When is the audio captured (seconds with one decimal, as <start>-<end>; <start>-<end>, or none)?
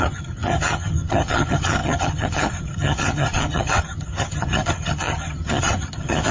none